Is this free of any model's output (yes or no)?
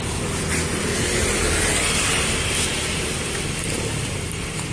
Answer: yes